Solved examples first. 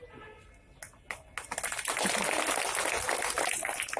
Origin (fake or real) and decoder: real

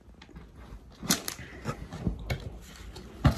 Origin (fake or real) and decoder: real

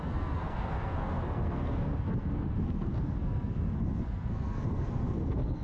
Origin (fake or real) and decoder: fake, codec, SNAC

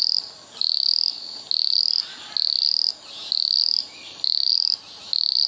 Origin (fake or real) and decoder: real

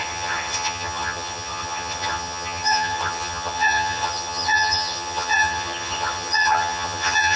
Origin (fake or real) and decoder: fake, vocoder, HiFi-GAN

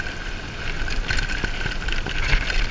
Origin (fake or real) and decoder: real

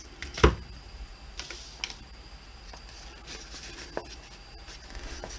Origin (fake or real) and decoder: real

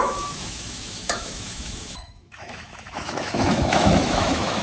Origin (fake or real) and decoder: fake, autoencoder, DAC-VAE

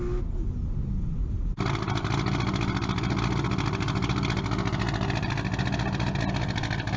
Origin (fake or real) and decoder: real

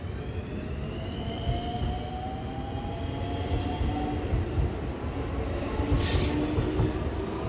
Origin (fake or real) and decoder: real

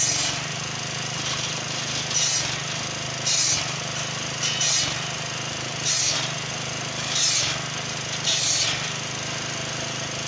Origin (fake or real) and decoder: real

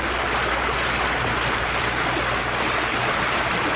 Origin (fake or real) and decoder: real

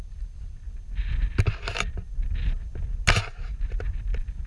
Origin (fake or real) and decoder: real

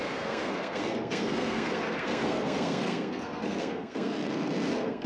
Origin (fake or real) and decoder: fake, codec, SNAC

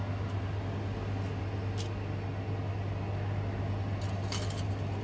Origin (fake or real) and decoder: real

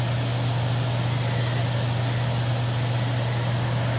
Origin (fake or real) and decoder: real